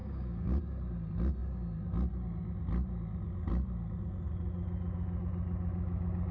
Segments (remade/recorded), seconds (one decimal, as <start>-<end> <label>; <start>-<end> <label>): 0.0-0.6 remade; 0.6-6.3 recorded